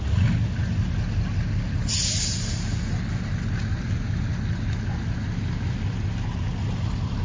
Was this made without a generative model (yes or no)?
yes